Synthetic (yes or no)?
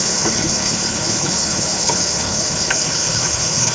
yes